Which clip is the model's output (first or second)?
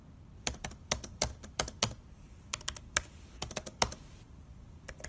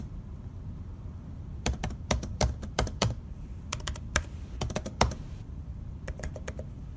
second